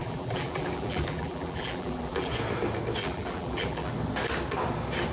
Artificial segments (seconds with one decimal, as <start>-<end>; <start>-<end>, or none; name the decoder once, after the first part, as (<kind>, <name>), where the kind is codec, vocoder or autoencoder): 0.0-2.3 (vocoder, BigVGAN v2); 3.0-3.9